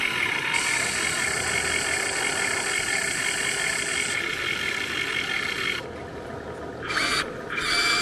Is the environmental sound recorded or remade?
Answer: recorded